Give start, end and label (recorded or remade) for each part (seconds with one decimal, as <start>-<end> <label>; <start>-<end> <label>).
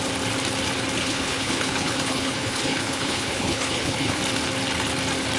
0.0-1.0 recorded; 1.0-4.2 remade; 4.2-5.4 recorded